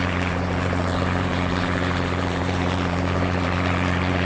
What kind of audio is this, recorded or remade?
remade